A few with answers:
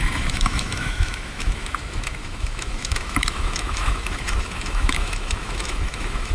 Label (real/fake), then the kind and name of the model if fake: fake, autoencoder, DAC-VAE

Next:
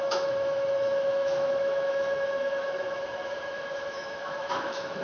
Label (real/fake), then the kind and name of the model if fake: fake, autoencoder, DAC-VAE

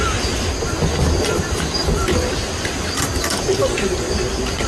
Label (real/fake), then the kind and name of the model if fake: real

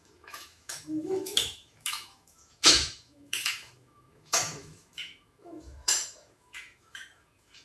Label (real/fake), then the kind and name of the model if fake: fake, autoencoder, DAC-VAE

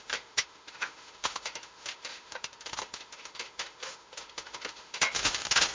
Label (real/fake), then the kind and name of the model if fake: fake, autoencoder, DAC-VAE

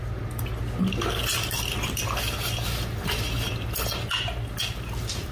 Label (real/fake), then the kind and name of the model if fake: real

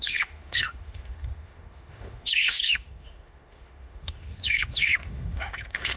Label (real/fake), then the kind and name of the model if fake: fake, autoencoder, DAC-VAE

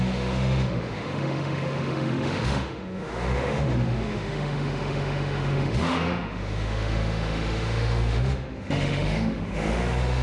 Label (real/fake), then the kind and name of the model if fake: fake, autoencoder, DAC-VAE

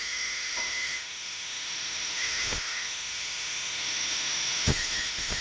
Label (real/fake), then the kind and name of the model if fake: fake, autoencoder, DAC-VAE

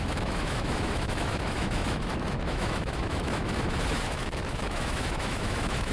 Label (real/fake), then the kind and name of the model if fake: fake, autoencoder, DAC-VAE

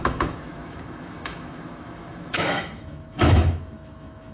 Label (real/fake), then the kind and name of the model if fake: fake, autoencoder, DAC-VAE